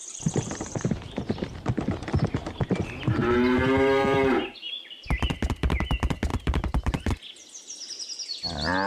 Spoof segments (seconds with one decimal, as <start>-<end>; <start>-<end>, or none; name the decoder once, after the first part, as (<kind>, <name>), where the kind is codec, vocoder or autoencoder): 0.0-0.9 (vocoder, BigVGAN v2); 3.2-4.8; 6.3-7.1

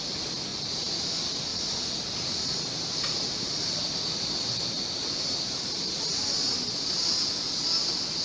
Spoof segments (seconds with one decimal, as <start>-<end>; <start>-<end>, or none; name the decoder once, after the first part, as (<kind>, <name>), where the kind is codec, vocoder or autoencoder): 0.5-1.1 (vocoder, BigVGAN v2); 1.5-6.0

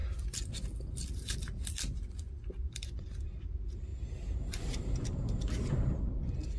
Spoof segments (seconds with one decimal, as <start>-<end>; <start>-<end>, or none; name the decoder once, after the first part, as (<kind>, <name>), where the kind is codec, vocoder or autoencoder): 0.0-3.3 (vocoder, BigVGAN v2)

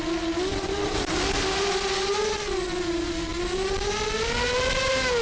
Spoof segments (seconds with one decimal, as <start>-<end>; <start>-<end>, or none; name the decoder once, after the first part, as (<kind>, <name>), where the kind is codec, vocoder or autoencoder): 0.5-1.2 (vocoder, BigVGAN v2)

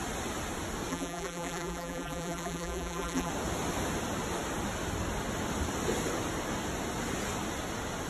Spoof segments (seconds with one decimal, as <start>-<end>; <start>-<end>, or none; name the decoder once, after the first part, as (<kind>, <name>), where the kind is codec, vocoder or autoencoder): 0.9-3.3 (vocoder, BigVGAN v2)

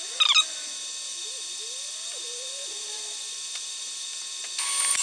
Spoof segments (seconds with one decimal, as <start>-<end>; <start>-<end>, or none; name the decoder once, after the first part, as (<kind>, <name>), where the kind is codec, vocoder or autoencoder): 1.1-4.1 (vocoder, BigVGAN v2)